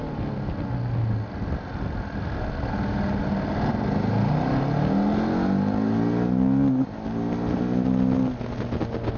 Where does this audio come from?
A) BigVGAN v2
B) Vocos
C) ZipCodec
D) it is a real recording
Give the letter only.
D